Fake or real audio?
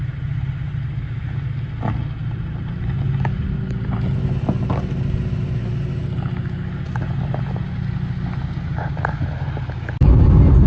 real